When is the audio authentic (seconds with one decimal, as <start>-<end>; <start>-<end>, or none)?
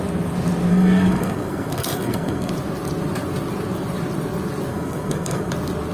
0.0-0.7; 2.5-4.7; 5.5-5.9